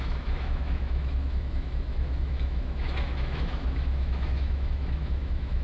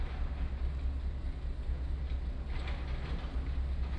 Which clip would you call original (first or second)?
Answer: second